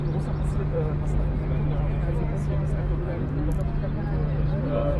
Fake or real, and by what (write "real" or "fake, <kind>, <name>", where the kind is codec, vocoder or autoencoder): real